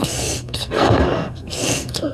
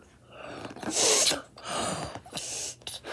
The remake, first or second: first